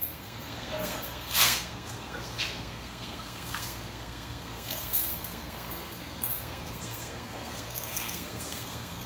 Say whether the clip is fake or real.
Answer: fake